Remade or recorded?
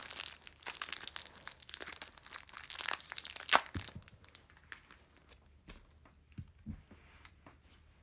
recorded